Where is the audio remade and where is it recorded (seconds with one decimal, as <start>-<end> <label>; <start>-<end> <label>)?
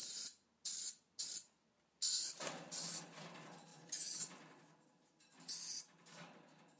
0.0-6.8 recorded